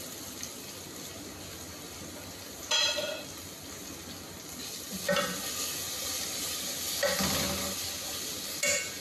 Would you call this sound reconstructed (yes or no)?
no